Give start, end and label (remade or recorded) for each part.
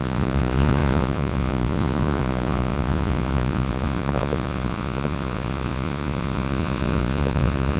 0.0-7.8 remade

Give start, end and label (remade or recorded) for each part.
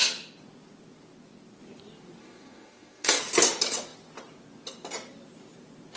0.0-2.2 recorded; 2.2-3.2 remade; 3.2-6.0 recorded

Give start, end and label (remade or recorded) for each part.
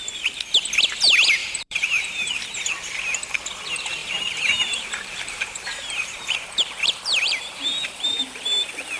0.0-1.4 recorded; 1.4-2.3 remade; 2.3-4.0 recorded; 4.0-8.3 remade; 8.3-9.0 recorded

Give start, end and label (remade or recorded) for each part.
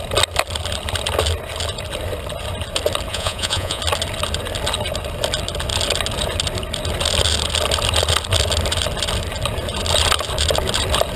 0.0-3.1 recorded; 3.1-3.8 remade; 3.8-11.2 recorded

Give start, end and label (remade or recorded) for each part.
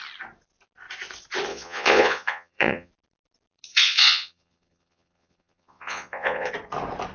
0.0-1.5 recorded; 1.5-2.9 remade; 2.9-3.7 recorded; 3.7-6.5 remade; 6.5-7.1 recorded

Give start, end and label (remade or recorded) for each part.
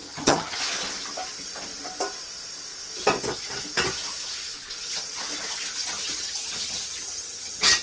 0.0-0.6 remade; 0.6-5.8 recorded; 5.8-7.8 remade